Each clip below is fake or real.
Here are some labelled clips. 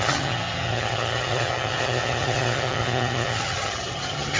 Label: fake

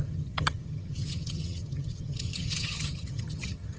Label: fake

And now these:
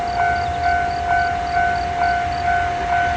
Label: real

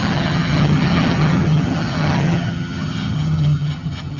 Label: fake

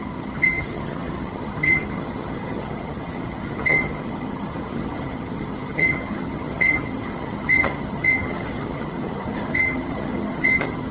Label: fake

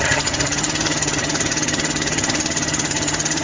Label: fake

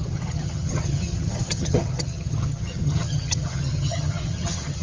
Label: fake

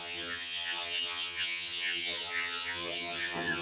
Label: fake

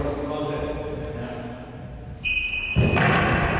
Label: real